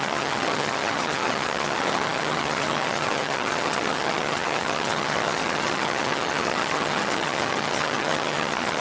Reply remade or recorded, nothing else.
remade